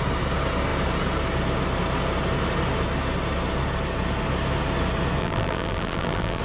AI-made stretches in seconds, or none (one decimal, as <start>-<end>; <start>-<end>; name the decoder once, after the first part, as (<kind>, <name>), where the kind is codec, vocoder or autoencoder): 5.2-6.4 (vocoder, BigVGAN v2)